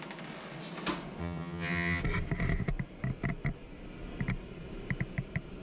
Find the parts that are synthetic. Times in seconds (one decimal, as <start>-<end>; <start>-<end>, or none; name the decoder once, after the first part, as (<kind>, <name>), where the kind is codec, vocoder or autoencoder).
1.2-2.0 (vocoder, HiFi-GAN)

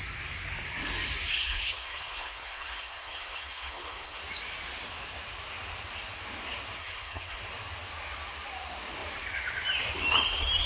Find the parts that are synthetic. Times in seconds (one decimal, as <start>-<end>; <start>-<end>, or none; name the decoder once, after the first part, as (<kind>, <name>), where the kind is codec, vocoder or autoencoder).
1.3-4.2 (codec, HILCodec); 6.8-7.4

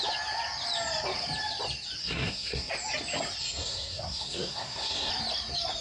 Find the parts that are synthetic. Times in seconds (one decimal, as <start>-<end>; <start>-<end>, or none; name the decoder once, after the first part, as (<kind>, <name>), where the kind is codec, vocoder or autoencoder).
2.0-2.7 (codec, SNAC); 3.4-5.1